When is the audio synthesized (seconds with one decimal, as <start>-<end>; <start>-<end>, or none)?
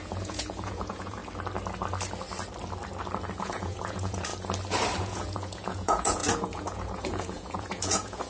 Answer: 0.0-1.2; 3.4-4.3; 5.0-8.3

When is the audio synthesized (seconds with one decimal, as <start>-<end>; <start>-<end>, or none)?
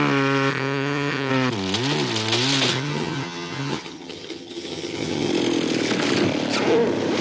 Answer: 0.5-1.3; 2.7-5.3